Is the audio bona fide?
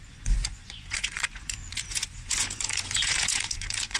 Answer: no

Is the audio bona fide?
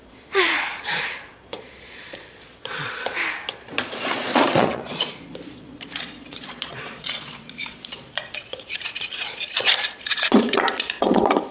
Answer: no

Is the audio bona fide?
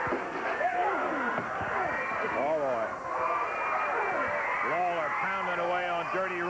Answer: yes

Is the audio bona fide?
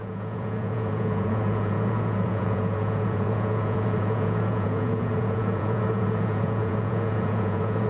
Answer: no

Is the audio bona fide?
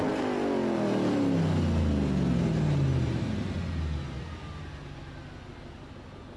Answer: yes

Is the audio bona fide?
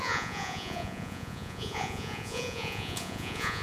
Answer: no